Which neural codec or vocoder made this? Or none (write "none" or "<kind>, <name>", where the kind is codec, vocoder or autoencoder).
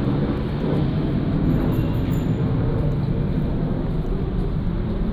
none